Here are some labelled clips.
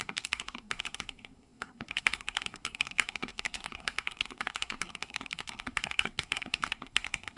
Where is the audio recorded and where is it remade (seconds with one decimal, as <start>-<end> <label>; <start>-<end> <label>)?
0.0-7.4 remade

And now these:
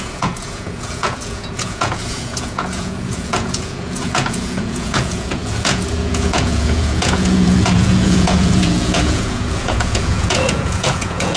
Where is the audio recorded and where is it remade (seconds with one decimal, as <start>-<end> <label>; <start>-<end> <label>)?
0.0-11.4 remade

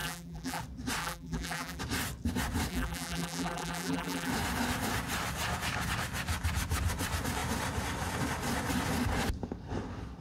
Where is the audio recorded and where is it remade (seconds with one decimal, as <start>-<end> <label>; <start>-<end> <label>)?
0.0-0.6 remade; 0.6-1.0 recorded; 1.0-1.8 remade; 1.8-2.7 recorded; 2.7-4.3 remade; 4.3-10.2 recorded